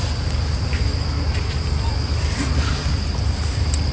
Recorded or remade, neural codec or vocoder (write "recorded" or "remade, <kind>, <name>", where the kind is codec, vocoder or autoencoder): recorded